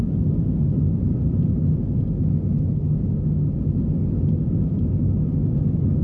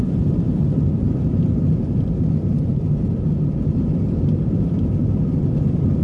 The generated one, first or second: second